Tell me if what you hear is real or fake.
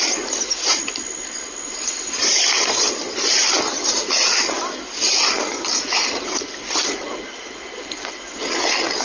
real